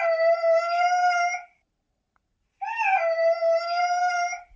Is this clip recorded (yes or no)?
no